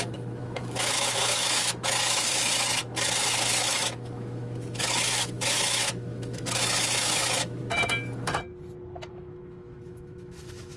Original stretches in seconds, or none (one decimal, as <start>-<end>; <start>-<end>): 7.6-9.1

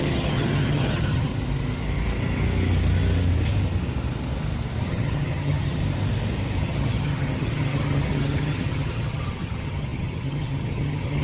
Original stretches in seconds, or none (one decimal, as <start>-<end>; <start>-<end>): 1.3-4.8; 5.8-6.6

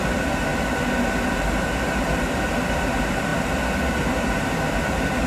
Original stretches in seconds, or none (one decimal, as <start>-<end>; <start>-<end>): 0.5-1.3

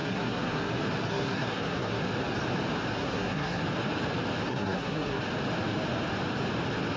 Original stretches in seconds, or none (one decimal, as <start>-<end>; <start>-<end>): 0.7-1.1; 2.0-2.9; 3.6-4.5; 5.2-7.0

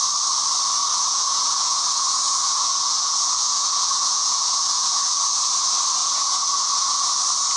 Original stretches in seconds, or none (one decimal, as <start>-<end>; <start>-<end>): 0.0-0.9; 5.1-6.0; 7.1-7.6

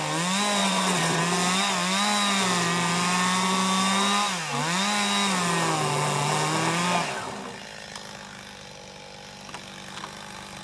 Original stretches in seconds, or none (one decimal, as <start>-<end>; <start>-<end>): 0.0-0.6; 1.2-10.6